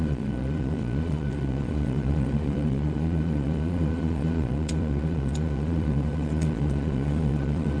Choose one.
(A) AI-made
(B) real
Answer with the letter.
A